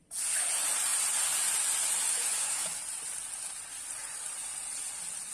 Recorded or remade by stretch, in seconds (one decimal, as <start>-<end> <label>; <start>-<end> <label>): 0.0-2.1 recorded; 2.1-2.8 remade; 2.8-5.3 recorded